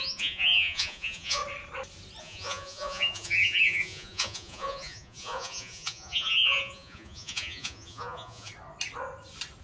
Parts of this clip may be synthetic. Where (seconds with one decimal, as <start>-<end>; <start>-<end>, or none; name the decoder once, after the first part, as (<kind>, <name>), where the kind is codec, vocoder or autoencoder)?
0.0-1.4 (vocoder, Vocos); 2.2-8.5